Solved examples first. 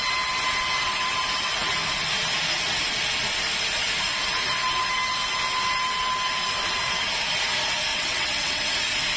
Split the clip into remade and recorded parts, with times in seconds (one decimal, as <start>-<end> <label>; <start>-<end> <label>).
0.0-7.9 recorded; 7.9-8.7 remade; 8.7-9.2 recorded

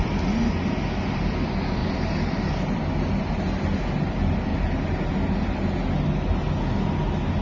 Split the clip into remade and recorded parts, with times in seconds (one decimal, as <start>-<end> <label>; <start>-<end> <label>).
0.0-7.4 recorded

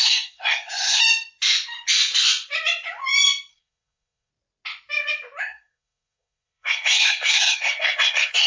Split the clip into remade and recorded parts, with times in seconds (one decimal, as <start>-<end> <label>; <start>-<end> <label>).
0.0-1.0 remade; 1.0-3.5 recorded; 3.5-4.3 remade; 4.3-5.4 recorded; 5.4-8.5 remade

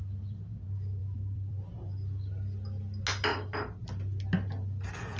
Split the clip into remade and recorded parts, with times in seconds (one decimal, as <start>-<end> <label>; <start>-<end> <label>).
0.0-1.0 recorded; 1.0-1.7 remade; 1.7-3.3 recorded; 3.3-3.9 remade; 3.9-5.2 recorded